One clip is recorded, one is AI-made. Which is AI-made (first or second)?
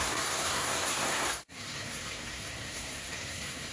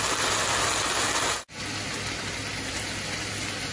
first